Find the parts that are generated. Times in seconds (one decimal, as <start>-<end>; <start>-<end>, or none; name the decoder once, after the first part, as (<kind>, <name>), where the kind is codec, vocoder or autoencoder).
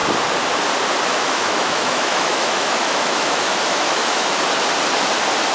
1.1-4.4 (autoencoder, DAC-VAE)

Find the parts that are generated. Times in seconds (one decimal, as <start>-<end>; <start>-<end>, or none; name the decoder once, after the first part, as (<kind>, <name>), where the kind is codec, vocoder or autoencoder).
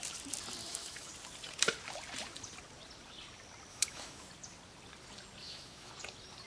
0.6-1.1 (autoencoder, DAC-VAE); 3.7-4.3; 5.4-5.9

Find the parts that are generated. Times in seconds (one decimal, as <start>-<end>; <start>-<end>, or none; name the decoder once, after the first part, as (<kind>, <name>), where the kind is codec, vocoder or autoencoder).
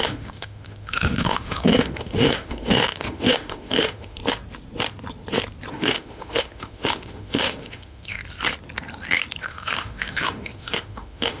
0.0-4.2 (autoencoder, DAC-VAE); 5.7-8.2; 9.4-11.4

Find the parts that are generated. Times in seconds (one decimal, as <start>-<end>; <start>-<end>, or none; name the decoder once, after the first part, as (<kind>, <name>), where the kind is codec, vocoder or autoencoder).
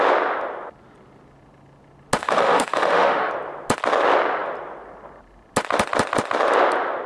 2.2-3.3 (autoencoder, DAC-VAE)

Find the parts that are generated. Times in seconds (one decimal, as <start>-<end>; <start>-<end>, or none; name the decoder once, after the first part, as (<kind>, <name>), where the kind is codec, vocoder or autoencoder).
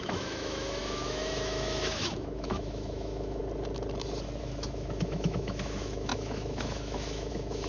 0.0-3.4 (autoencoder, DAC-VAE); 4.4-7.7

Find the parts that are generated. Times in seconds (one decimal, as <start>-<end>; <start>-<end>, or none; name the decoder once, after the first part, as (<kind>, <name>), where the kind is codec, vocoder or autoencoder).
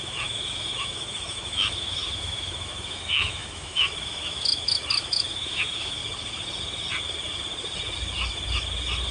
0.0-6.0 (autoencoder, DAC-VAE)